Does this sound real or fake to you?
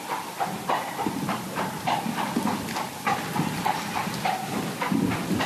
real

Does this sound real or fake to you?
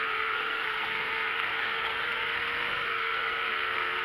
fake